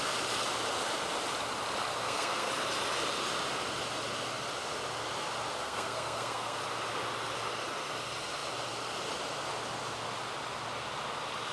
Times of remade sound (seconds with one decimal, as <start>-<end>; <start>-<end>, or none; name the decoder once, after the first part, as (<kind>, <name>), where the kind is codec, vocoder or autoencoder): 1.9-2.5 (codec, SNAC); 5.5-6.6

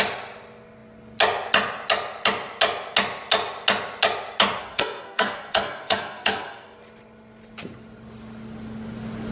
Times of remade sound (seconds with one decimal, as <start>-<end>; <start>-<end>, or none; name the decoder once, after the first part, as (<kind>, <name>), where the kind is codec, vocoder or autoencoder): 4.6-6.8 (codec, SNAC)

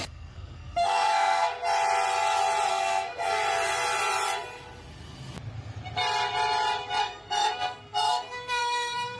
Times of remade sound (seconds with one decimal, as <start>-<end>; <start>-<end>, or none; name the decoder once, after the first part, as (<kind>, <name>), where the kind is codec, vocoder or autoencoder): 0.0-1.5 (codec, SNAC); 2.7-3.4; 7.0-9.2

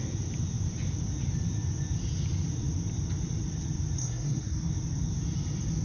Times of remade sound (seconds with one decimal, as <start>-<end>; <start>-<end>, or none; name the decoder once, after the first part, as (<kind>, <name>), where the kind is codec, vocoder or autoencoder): 4.0-4.7 (codec, SNAC)